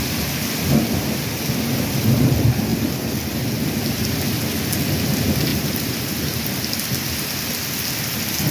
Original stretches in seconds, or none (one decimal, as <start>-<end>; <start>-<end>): 0.0-5.5; 6.2-8.5